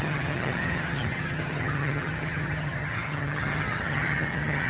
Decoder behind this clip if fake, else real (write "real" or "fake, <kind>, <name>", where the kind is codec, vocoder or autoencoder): fake, vocoder, HiFi-GAN